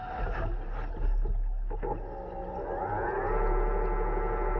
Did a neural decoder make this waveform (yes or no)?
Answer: no